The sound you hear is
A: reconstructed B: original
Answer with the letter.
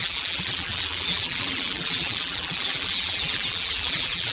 A